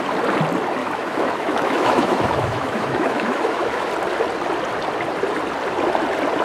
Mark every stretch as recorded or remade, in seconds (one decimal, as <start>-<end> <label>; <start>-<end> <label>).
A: 0.0-0.8 recorded; 0.8-3.9 remade; 3.9-6.4 recorded